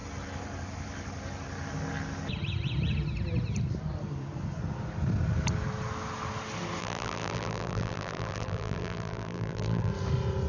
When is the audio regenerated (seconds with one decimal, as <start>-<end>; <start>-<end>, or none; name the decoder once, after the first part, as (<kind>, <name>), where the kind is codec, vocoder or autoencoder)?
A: 6.8-9.9 (vocoder, BigVGAN v2)